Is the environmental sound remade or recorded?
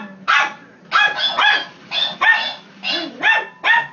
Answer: recorded